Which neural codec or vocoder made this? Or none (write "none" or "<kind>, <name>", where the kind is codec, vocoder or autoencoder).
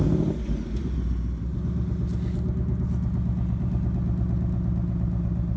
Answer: none